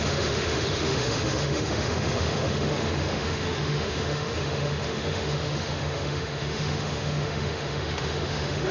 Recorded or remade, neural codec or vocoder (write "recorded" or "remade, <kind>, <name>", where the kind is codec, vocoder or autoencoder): remade, autoencoder, DAC-VAE